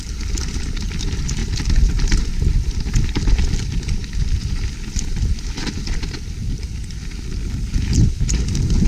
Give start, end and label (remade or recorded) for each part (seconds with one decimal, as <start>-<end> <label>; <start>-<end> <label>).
0.0-8.9 recorded